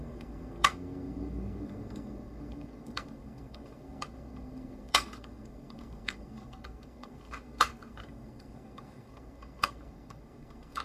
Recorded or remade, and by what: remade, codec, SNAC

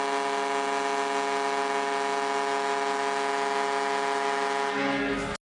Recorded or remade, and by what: recorded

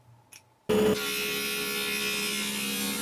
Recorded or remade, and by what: recorded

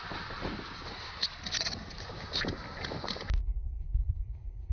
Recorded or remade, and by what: recorded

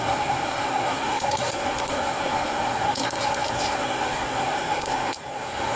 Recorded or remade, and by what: remade, codec, SNAC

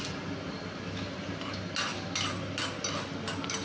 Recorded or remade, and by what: recorded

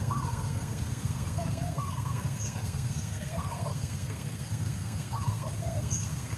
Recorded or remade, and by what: remade, codec, SNAC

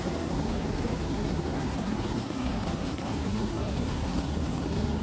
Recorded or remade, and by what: remade, codec, SNAC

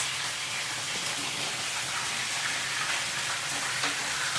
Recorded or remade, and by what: recorded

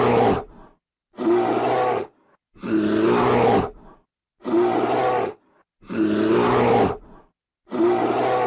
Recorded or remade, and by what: recorded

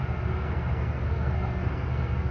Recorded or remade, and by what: remade, codec, SNAC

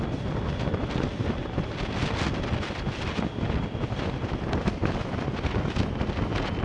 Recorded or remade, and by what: recorded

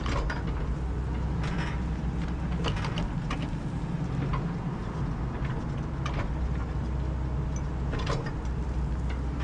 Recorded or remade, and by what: recorded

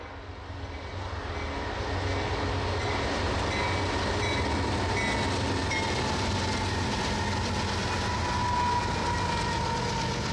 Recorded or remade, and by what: recorded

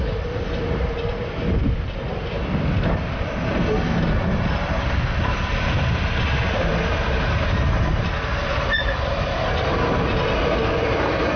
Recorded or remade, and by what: recorded